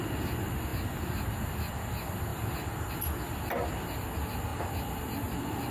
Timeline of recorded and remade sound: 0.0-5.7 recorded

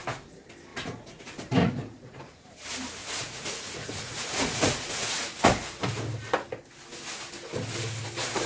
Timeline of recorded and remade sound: 0.0-0.7 recorded; 0.7-1.2 remade; 1.2-1.6 recorded; 1.6-2.5 remade; 2.5-3.0 recorded; 3.0-5.8 remade; 5.8-8.5 recorded

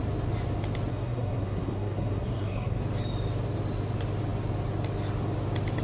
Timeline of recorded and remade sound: 0.0-0.9 recorded; 0.9-2.8 remade; 2.8-5.8 recorded

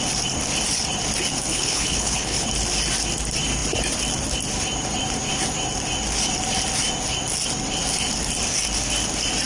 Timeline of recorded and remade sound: 0.0-1.5 recorded; 1.5-2.5 remade; 2.5-9.5 recorded

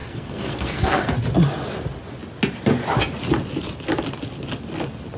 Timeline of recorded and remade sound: 0.0-1.1 remade; 1.1-5.2 recorded

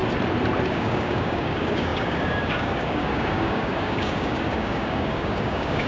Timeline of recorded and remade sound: 0.0-0.7 recorded; 0.7-5.9 remade